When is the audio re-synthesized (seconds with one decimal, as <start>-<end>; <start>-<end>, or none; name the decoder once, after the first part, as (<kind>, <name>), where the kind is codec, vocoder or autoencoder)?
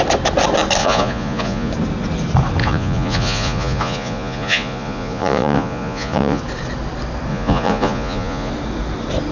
0.8-1.7 (vocoder, Vocos); 2.6-6.4; 7.3-8.5